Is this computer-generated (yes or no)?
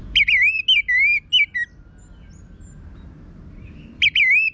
no